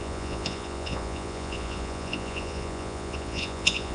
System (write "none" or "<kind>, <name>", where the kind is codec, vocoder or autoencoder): vocoder, Vocos